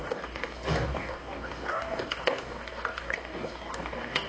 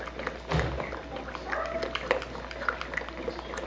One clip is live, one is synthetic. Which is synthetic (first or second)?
first